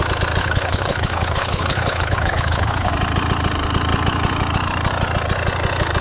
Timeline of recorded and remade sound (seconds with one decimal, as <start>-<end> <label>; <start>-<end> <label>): 0.0-0.4 recorded; 0.4-2.9 remade; 2.9-6.0 recorded